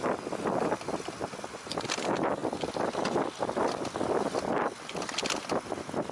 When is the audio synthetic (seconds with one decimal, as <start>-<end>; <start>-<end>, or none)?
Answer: none